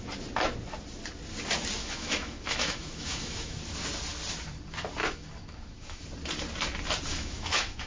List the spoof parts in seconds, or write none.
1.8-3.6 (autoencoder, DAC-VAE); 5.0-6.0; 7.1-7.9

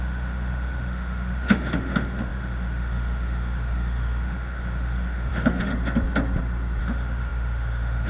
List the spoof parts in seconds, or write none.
0.0-5.7 (autoencoder, DAC-VAE); 6.8-8.1